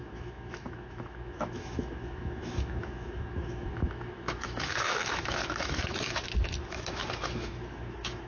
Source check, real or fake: fake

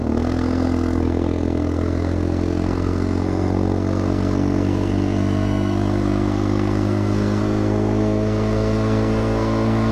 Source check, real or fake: fake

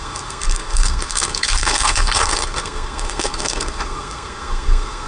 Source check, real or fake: fake